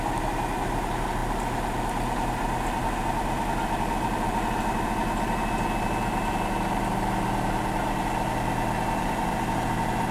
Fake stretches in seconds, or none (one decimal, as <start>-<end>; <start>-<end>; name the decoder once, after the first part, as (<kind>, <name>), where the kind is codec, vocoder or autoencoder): none